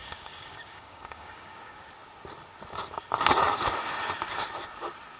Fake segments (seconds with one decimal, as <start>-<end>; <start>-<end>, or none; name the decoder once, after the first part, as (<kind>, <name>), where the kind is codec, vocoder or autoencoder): 0.0-1.8 (codec, DAC)